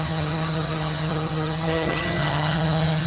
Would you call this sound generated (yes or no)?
yes